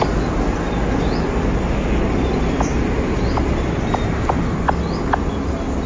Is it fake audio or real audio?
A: real